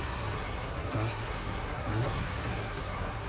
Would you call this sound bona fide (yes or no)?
no